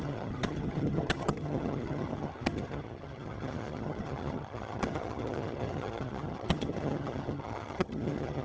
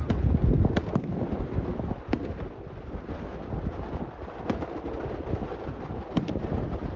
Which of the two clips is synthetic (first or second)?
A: first